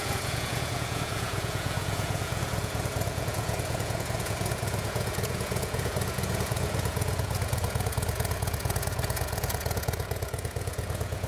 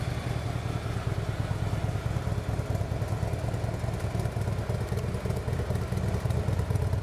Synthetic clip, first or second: first